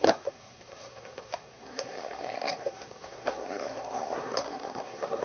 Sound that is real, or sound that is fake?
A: fake